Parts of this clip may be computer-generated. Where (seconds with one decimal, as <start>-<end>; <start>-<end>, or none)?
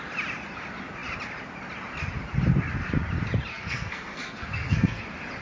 3.5-5.0